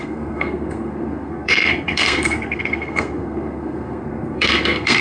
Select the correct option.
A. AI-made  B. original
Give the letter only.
A